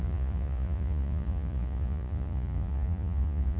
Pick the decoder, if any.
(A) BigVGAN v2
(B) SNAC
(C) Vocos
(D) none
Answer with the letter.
C